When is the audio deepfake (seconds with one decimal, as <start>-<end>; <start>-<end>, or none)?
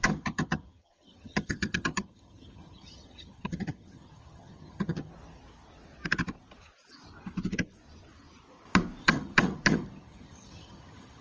0.0-5.1; 9.0-11.2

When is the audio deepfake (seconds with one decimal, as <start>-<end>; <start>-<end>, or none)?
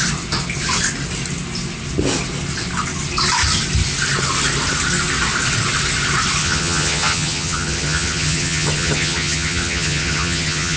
6.4-10.8